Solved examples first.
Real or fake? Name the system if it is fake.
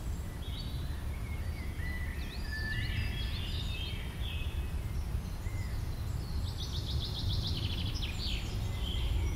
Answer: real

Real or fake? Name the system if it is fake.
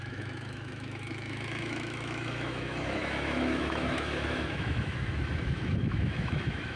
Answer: fake, autoencoder, DAC-VAE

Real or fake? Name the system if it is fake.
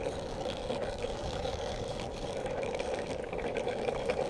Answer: fake, codec, DAC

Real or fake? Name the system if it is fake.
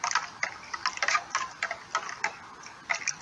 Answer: real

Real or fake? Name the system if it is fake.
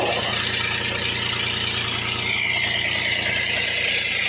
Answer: real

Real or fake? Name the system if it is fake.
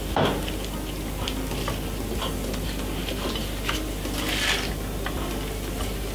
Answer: real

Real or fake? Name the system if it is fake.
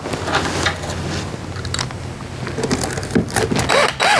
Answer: real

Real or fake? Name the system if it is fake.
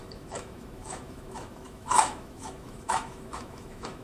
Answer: fake, autoencoder, DAC-VAE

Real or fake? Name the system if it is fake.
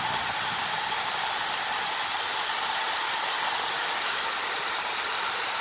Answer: real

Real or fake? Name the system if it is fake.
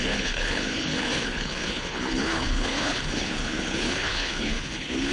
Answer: fake, codec, HILCodec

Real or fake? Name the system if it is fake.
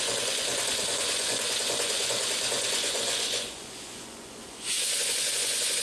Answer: fake, vocoder, Vocos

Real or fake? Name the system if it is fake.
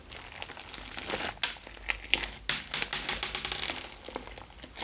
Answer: real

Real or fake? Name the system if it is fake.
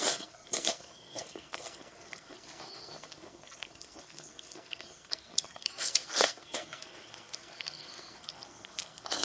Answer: fake, codec, SNAC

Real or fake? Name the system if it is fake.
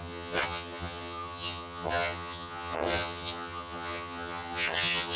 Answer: fake, vocoder, HiFi-GAN